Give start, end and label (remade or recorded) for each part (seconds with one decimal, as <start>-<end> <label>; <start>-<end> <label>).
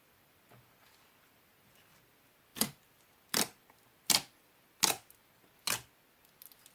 0.0-6.7 recorded